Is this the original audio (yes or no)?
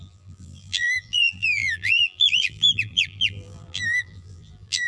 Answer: no